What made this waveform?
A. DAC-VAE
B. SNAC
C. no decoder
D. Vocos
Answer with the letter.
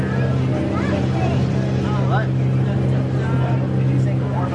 C